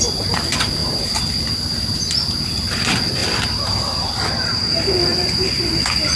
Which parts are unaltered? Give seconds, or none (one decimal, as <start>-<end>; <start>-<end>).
0.0-0.8; 2.1-3.2; 4.6-5.1; 5.7-6.2